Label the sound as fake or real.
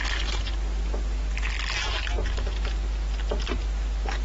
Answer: real